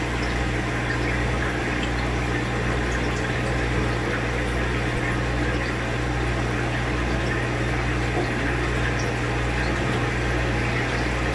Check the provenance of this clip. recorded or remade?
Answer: recorded